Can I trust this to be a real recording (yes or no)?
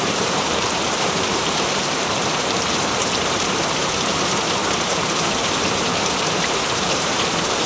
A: no